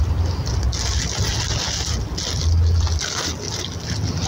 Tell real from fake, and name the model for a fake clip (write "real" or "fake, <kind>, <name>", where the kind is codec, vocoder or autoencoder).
real